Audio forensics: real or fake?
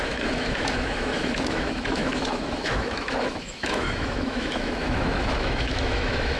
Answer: fake